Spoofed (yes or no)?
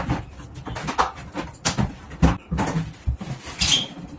no